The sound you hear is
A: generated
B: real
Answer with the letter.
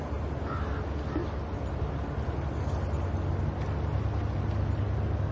B